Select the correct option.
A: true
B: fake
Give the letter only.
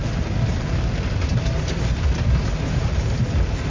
A